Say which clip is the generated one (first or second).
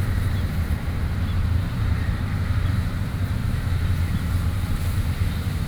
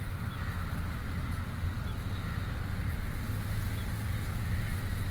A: first